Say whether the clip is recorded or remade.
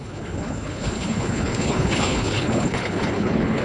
remade